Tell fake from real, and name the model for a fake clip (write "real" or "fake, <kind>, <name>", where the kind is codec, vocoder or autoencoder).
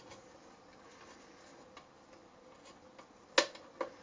real